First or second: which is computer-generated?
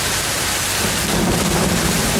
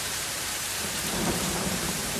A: second